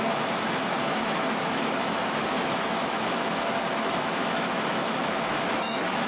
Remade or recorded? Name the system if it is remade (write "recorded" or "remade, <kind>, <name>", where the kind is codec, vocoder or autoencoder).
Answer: remade, autoencoder, DAC-VAE